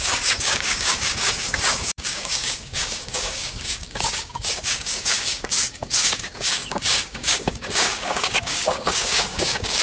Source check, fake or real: fake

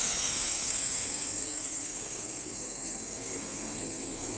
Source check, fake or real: fake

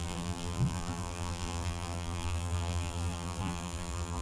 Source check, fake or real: fake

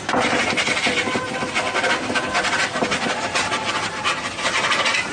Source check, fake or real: real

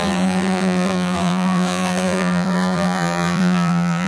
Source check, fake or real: fake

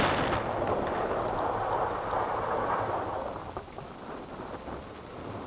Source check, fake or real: real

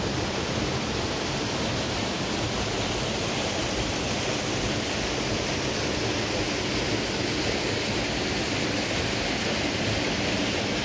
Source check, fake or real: real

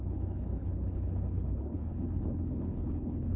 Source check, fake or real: fake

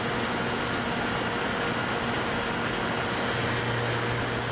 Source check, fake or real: real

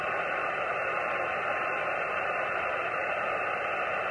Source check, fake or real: real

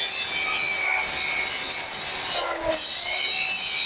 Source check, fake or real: real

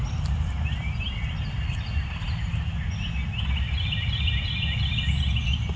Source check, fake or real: real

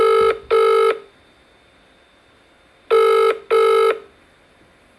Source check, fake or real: real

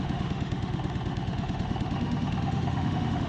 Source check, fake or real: fake